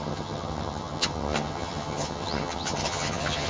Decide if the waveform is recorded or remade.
remade